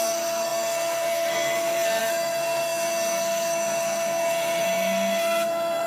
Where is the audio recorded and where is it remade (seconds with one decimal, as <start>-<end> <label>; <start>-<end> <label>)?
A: 0.0-5.9 remade